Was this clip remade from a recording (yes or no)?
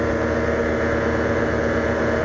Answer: no